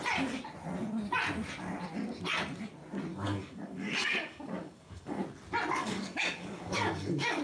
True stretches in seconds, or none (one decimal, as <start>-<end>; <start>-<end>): 0.0-3.1; 5.2-5.8